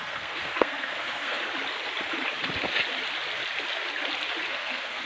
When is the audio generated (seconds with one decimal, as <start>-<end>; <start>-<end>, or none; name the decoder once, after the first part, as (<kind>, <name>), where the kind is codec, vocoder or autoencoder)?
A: 0.0-1.4 (codec, SNAC); 4.5-5.1